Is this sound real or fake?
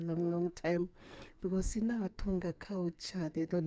fake